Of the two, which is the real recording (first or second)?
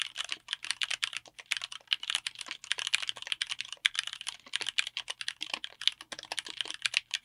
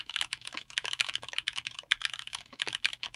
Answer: first